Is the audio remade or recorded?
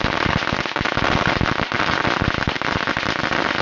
recorded